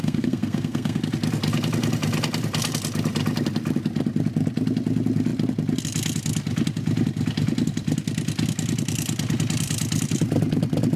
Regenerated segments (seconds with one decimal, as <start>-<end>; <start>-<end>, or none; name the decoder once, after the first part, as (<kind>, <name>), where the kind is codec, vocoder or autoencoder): 0.0-1.0 (codec, SNAC)

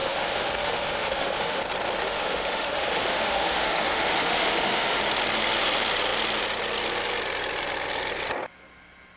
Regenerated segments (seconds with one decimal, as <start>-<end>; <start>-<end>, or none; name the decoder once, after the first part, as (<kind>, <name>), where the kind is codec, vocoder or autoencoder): 0.0-1.6 (autoencoder, DAC-VAE); 2.0-5.0

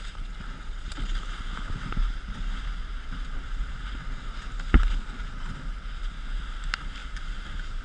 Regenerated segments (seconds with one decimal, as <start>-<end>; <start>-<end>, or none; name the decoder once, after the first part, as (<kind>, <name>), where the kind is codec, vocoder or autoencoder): none

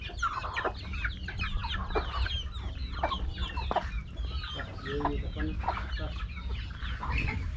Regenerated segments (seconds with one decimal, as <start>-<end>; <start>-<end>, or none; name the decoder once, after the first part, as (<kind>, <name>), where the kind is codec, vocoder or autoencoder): none

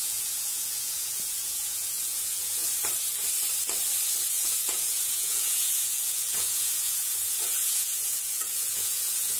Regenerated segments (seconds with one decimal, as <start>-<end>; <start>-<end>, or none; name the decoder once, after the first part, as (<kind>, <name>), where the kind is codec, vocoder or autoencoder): 0.0-2.6 (vocoder, Vocos); 4.3-9.4

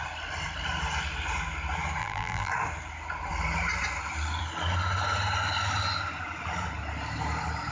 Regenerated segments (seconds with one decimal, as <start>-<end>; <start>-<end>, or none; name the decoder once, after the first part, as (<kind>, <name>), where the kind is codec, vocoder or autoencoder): 2.0-2.5 (vocoder, BigVGAN v2)

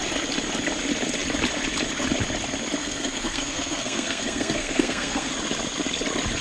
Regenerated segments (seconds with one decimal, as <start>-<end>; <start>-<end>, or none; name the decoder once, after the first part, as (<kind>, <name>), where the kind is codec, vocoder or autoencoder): 2.8-5.3 (codec, SNAC)